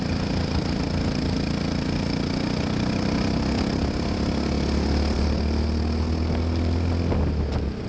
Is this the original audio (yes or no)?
yes